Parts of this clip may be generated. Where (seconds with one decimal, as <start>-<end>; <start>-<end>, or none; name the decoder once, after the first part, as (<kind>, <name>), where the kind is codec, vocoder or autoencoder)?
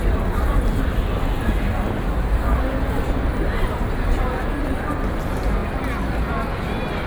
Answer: none